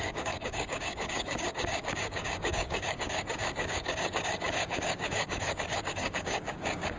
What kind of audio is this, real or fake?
fake